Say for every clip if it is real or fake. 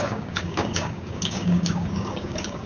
fake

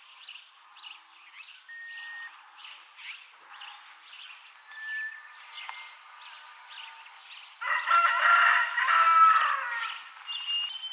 real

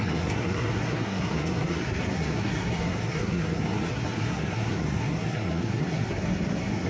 fake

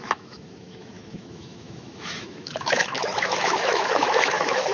fake